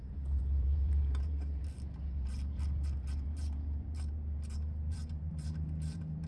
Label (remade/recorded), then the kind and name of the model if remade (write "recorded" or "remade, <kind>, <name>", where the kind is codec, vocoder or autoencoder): remade, vocoder, BigVGAN v2